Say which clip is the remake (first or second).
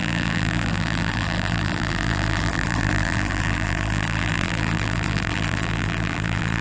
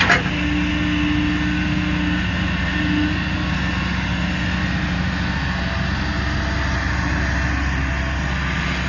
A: first